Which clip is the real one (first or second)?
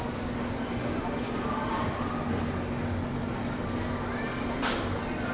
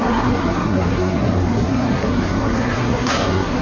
first